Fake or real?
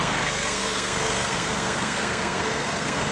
fake